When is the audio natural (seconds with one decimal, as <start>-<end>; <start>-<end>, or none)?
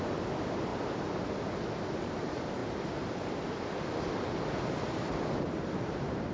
0.0-6.3